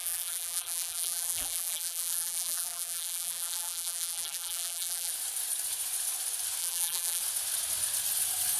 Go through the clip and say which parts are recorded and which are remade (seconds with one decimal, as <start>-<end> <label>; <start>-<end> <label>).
0.0-5.1 remade; 5.1-6.6 recorded; 6.6-7.2 remade; 7.2-8.6 recorded